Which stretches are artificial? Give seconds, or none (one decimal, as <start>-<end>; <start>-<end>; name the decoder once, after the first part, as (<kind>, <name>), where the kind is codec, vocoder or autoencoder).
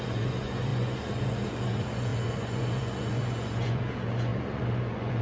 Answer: 0.0-5.2 (vocoder, Vocos)